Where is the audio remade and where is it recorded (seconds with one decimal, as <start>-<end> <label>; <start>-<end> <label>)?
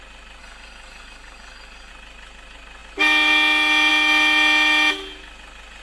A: 0.0-0.4 recorded; 0.4-1.9 remade; 1.9-5.8 recorded